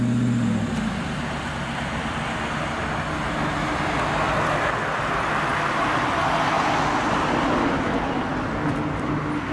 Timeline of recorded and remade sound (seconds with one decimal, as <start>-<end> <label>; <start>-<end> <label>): 0.0-9.5 recorded